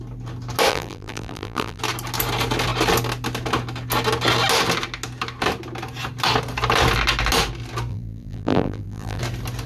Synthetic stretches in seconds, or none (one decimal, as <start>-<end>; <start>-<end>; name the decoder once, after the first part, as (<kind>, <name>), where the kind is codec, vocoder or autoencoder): 0.7-1.8 (vocoder, BigVGAN v2); 7.9-9.2

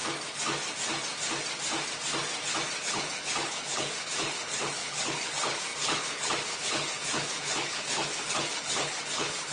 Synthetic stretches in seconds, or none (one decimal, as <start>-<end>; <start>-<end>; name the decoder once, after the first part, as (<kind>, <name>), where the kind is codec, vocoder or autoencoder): 2.8-9.5 (codec, HILCodec)

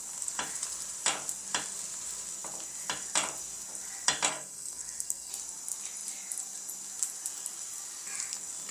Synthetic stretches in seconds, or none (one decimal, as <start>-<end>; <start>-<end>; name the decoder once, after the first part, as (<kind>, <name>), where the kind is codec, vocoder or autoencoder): 4.3-5.3 (codec, SNAC)

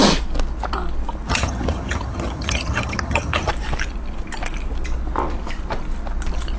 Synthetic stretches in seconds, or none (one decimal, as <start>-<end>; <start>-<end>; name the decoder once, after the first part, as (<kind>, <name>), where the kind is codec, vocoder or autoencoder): 1.3-3.5 (vocoder, HiFi-GAN)

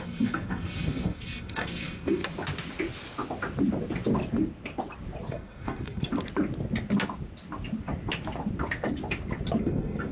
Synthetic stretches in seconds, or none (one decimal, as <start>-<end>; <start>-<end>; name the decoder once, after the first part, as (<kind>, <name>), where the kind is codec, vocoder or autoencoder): 0.0-2.2 (codec, SNAC); 5.3-6.1; 9.6-10.1